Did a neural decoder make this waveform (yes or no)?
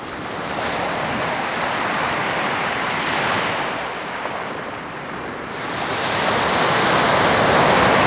no